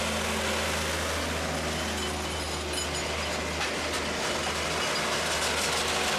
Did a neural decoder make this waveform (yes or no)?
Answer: no